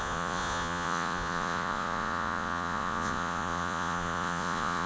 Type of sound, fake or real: fake